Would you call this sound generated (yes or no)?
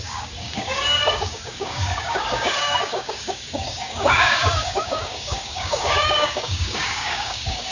yes